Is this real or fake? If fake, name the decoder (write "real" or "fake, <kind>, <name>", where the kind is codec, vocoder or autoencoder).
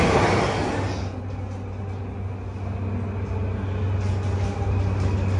real